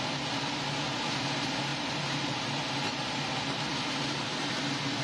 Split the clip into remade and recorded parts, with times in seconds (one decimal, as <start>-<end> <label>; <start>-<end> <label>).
0.0-1.7 recorded; 1.7-3.2 remade; 3.2-5.0 recorded